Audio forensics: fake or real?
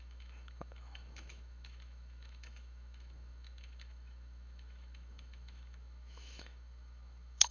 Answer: fake